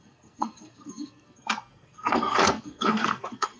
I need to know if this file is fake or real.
fake